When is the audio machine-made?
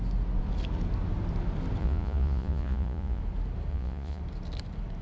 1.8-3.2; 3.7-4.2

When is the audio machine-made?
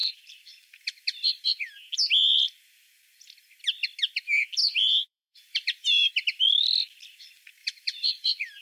0.0-0.8; 4.6-6.1; 7.6-8.6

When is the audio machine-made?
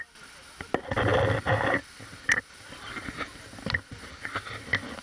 none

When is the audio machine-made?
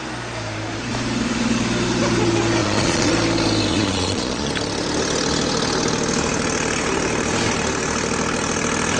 2.6-3.1; 3.7-4.5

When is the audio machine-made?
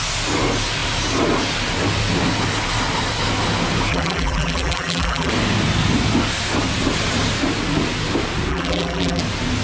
3.9-5.3; 8.5-9.2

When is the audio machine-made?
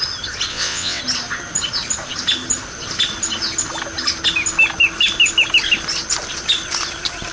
0.5-1.0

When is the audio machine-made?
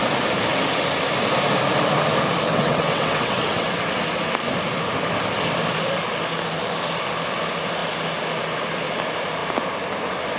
2.5-3.8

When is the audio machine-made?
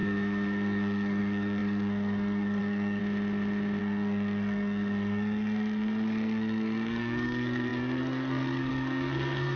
0.0-3.0; 3.8-9.6